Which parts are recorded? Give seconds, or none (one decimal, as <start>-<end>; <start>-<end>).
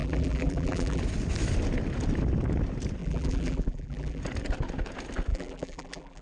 1.0-3.0; 4.2-5.3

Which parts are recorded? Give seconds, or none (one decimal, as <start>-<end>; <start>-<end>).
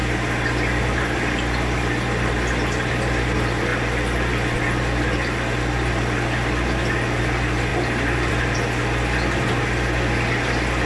0.0-10.9